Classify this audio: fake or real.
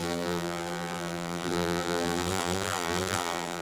fake